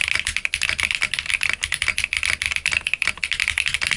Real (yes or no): yes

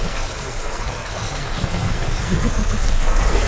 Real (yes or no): no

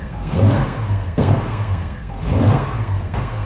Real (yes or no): no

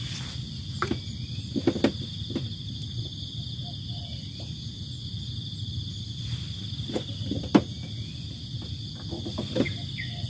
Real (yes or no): yes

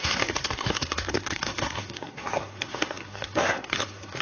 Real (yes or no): no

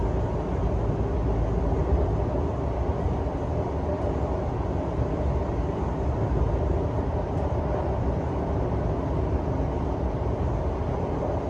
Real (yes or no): yes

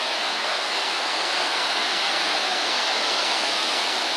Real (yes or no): no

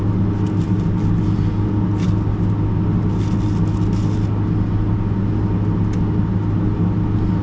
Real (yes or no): yes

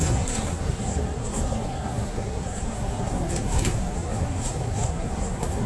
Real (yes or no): no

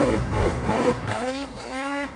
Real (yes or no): no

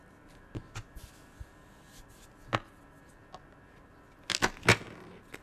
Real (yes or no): yes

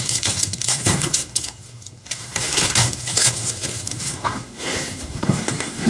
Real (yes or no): no